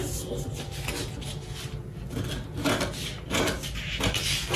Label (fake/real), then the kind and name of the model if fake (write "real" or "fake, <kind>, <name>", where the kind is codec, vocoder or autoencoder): real